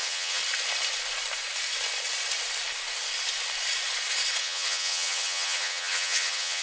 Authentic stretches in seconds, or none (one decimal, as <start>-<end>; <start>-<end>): 0.4-4.4